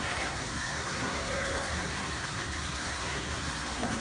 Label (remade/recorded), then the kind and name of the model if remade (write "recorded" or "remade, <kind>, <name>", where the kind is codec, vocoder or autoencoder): remade, codec, SNAC